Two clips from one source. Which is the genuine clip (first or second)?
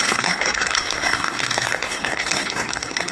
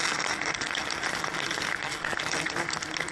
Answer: second